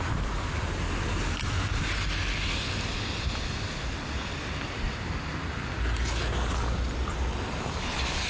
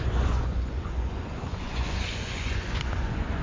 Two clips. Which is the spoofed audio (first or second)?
second